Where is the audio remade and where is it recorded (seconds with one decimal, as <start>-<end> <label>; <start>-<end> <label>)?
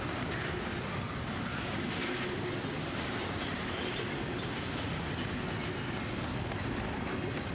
0.0-1.5 recorded; 1.5-2.5 remade; 2.5-7.5 recorded